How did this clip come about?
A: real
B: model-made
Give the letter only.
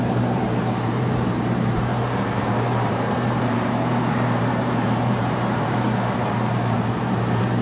B